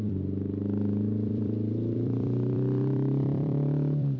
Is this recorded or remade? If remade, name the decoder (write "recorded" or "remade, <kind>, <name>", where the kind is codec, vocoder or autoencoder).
remade, vocoder, BigVGAN v2